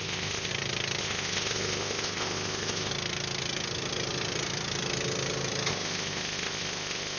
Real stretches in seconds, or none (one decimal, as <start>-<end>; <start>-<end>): 0.5-1.0; 2.9-5.7